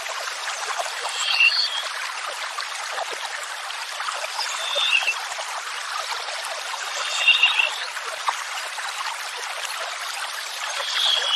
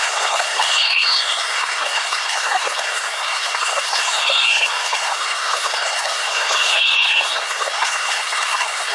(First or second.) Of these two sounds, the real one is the first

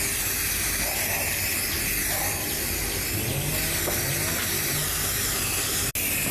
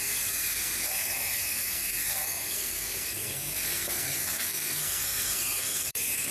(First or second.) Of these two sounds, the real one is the first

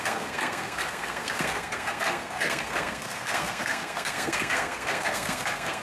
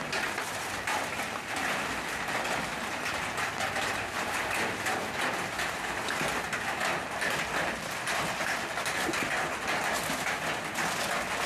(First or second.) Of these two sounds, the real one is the second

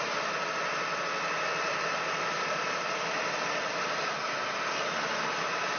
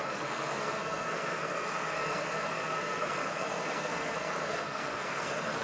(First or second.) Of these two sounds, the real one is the first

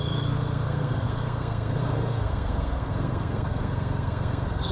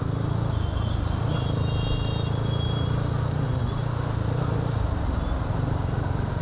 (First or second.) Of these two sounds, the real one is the second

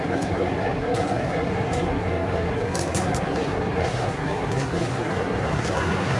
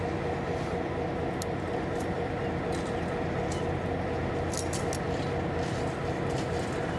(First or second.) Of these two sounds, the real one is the second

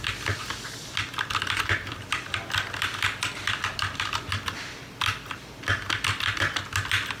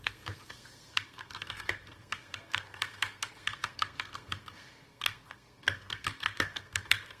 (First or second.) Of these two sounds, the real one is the first